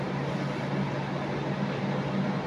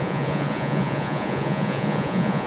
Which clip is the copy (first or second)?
second